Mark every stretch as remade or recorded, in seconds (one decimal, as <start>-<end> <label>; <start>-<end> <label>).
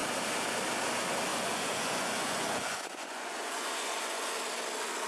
0.0-1.3 recorded; 1.3-4.4 remade; 4.4-5.1 recorded